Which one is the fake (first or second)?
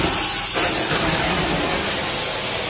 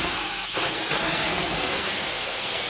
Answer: second